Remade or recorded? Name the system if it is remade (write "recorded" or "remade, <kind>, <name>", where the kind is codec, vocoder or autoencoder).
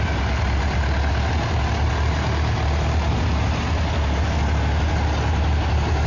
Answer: recorded